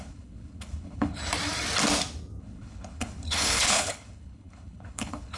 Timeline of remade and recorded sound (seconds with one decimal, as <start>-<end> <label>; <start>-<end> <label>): 0.0-1.2 remade; 1.2-2.4 recorded; 2.4-5.4 remade